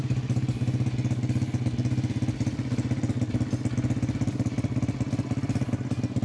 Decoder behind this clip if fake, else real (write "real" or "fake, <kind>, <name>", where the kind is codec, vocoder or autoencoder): real